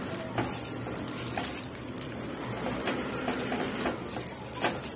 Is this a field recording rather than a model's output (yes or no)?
yes